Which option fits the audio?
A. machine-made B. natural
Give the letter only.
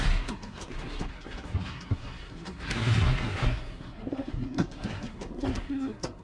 A